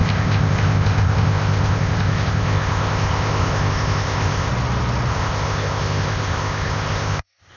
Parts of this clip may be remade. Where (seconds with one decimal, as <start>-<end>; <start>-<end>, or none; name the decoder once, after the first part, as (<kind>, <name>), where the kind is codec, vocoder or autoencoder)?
0.0-4.5 (codec, ZipCodec); 5.1-7.6